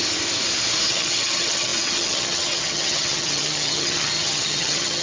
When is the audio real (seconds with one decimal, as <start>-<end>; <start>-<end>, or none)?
0.0-0.9